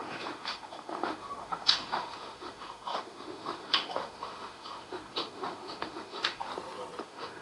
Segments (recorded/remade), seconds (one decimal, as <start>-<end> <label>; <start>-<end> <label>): 0.0-6.5 remade; 6.5-7.0 recorded; 7.0-7.4 remade